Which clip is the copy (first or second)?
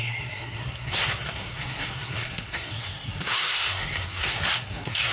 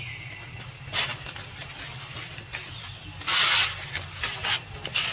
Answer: first